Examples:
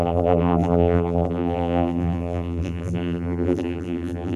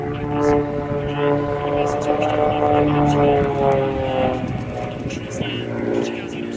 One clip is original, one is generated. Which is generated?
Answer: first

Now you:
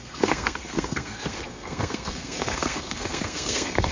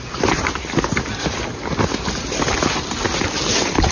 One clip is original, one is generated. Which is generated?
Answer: first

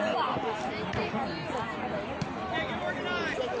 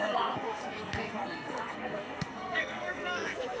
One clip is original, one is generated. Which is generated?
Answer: second